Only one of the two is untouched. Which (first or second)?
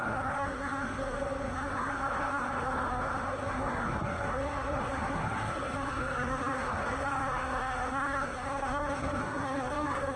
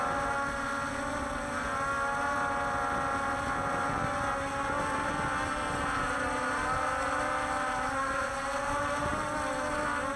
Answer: second